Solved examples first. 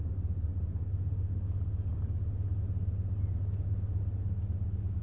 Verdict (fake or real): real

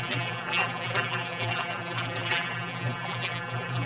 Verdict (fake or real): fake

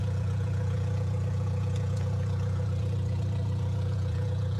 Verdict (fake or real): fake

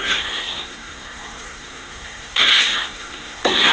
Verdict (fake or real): fake